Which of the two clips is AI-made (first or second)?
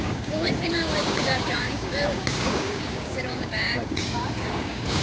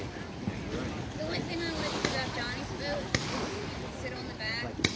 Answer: first